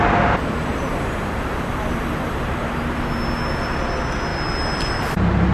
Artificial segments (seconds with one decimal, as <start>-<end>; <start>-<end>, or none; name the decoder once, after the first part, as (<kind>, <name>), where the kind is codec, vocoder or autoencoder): 0.7-3.1 (vocoder, BigVGAN v2)

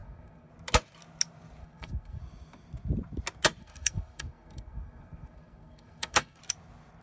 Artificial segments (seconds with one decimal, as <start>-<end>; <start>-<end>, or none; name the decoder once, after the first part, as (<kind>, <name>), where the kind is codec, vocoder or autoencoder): 0.0-0.5 (codec, SNAC); 1.6-2.2; 3.6-6.4

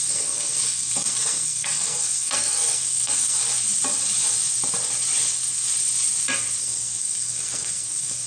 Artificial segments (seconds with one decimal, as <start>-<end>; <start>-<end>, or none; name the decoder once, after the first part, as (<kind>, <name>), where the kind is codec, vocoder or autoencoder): 0.0-3.4 (codec, SNAC); 6.6-8.3

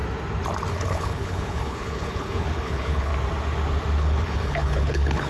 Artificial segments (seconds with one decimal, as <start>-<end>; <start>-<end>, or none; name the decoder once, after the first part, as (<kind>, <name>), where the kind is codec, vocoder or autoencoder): 0.7-3.1 (codec, HILCodec); 4.0-5.3

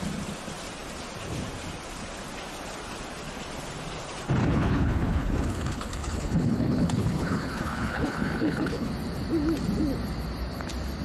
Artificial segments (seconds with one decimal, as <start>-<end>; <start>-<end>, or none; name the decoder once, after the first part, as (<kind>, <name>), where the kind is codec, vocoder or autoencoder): 4.4-8.9 (codec, HILCodec)

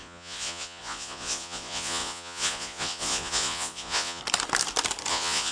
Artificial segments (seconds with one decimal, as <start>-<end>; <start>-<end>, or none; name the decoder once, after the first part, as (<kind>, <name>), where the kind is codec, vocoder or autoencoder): 0.0-4.2 (vocoder, Vocos); 5.1-5.5

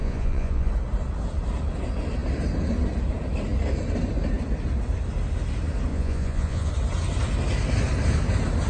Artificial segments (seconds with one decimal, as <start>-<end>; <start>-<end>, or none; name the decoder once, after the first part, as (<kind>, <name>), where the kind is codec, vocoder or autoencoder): 0.0-0.7 (vocoder, Vocos); 5.9-6.7